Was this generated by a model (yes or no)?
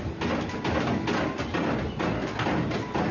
no